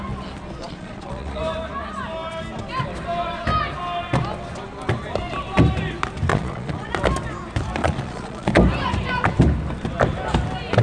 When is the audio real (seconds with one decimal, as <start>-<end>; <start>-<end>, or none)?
0.0-0.6; 1.4-6.3; 6.9-7.8; 8.5-10.8